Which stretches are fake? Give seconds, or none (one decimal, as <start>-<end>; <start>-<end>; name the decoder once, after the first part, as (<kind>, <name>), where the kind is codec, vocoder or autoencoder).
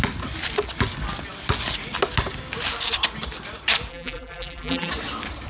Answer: 3.9-4.9 (vocoder, BigVGAN v2)